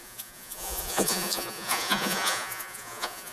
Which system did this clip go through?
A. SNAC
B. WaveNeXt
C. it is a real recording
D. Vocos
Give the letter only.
D